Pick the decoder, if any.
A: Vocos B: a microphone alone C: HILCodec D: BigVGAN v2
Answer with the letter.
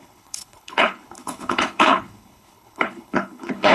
C